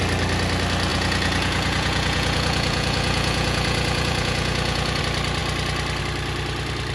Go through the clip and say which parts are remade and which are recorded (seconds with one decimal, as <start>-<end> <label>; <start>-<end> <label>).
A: 0.0-0.9 recorded; 0.9-5.0 remade; 5.0-6.9 recorded